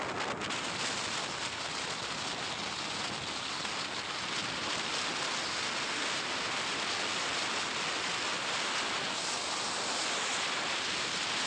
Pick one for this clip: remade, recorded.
recorded